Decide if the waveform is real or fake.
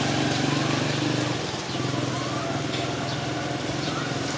real